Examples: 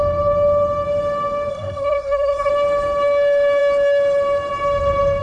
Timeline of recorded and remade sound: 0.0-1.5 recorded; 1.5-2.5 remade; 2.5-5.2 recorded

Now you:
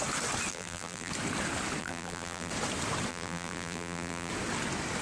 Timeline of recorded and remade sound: 0.0-0.5 recorded; 0.5-1.1 remade; 1.1-1.8 recorded; 1.8-2.5 remade; 2.5-3.1 recorded; 3.1-4.3 remade; 4.3-5.0 recorded

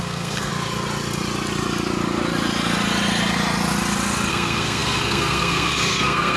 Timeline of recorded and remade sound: 0.0-0.5 remade; 0.5-4.3 recorded; 4.3-6.4 remade